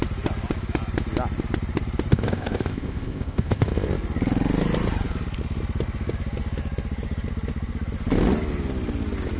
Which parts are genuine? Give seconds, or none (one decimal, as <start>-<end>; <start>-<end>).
0.0-2.1; 3.9-9.4